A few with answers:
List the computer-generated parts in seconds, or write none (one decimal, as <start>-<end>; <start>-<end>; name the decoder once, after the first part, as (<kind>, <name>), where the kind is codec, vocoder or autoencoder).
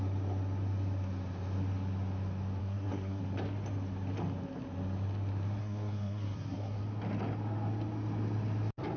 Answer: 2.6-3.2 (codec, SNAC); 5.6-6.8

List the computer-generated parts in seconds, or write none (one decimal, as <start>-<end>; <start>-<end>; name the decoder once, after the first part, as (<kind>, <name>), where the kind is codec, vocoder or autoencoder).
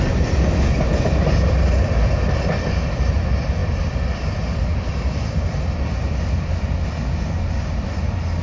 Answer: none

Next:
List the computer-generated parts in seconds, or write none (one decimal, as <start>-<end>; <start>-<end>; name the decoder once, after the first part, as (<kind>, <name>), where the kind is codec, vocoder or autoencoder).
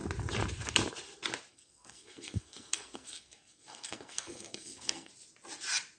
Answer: 1.5-5.1 (codec, SNAC)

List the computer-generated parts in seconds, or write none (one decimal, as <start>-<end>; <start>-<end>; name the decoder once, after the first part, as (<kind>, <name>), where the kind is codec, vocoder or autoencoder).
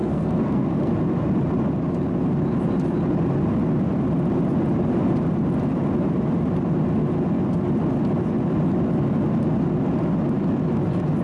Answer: 0.0-0.9 (codec, SNAC)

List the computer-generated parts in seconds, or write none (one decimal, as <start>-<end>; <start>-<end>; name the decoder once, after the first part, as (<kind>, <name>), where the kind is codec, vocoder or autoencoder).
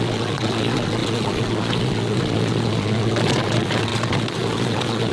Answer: 0.0-5.1 (vocoder, Vocos)